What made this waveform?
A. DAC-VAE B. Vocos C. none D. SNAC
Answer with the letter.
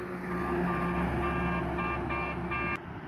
C